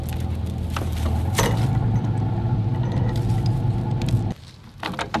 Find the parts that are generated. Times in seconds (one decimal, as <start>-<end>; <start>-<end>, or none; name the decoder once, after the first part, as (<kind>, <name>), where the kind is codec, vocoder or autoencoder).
none